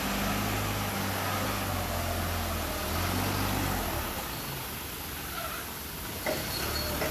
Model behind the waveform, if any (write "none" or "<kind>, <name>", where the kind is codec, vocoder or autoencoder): none